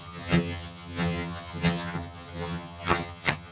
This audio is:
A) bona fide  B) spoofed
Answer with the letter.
B